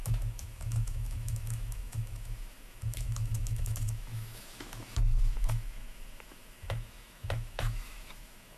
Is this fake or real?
fake